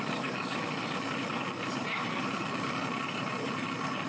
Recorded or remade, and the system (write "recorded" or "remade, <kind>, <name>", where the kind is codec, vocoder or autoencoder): recorded